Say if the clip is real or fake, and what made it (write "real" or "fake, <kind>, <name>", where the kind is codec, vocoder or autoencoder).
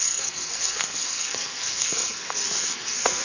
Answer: fake, codec, SNAC